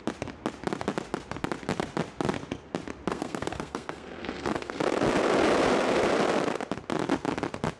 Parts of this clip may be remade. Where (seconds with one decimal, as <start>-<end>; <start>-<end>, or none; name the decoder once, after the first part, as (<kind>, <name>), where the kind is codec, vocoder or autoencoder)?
3.1-4.8 (codec, SNAC)